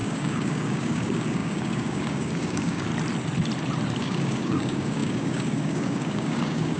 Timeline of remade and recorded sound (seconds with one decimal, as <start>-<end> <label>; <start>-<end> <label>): 0.0-2.9 remade; 2.9-4.0 recorded; 4.0-6.8 remade